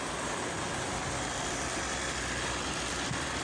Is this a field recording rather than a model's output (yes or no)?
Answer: yes